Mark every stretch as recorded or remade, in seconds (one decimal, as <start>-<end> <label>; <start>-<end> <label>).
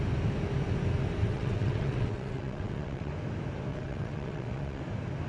0.0-1.3 recorded; 1.3-3.1 remade; 3.1-3.7 recorded; 3.7-4.8 remade; 4.8-5.3 recorded